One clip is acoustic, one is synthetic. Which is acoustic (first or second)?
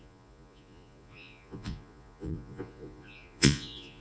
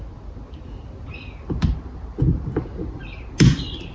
second